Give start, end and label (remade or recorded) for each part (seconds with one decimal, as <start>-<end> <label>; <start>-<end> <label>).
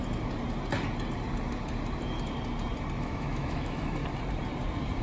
0.0-3.0 recorded; 3.0-4.0 remade; 4.0-5.0 recorded